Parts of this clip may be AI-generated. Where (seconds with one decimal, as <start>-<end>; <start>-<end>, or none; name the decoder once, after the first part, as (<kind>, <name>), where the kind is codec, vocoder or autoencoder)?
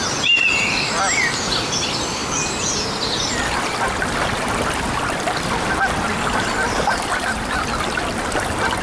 none